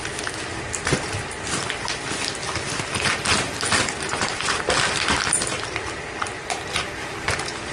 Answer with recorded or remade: remade